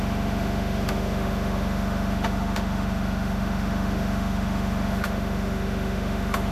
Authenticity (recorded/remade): remade